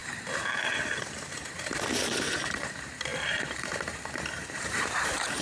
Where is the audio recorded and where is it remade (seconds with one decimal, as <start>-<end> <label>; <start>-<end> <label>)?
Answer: 0.0-3.1 recorded; 3.1-5.4 remade